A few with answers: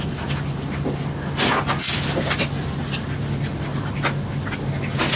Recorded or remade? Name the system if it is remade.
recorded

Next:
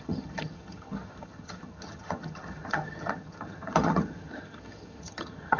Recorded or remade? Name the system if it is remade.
remade, vocoder, HiFi-GAN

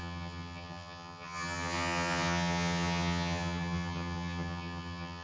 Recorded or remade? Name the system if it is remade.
remade, vocoder, HiFi-GAN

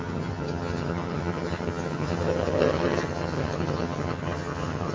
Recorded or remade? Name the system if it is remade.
remade, vocoder, HiFi-GAN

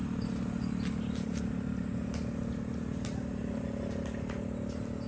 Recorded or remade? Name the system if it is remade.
recorded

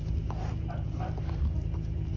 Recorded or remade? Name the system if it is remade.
recorded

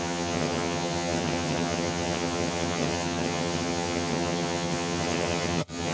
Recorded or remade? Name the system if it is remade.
remade, vocoder, HiFi-GAN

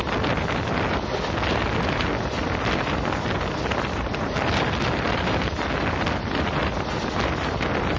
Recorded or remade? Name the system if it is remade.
recorded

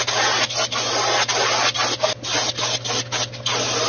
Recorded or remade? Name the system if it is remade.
recorded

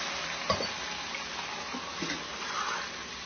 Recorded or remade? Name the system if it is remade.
recorded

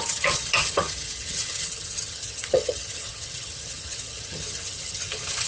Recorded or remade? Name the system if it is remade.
remade, vocoder, HiFi-GAN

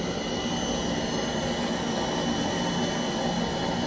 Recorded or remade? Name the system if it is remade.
recorded